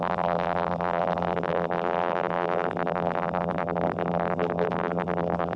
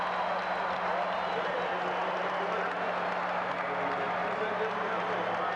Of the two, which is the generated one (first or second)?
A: first